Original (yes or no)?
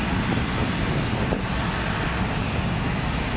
yes